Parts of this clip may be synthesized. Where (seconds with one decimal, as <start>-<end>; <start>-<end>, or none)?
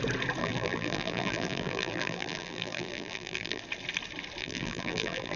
0.4-3.6; 4.4-5.4